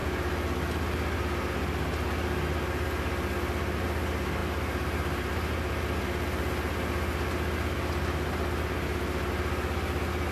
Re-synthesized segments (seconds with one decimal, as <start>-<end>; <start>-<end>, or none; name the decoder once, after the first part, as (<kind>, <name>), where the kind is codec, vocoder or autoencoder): none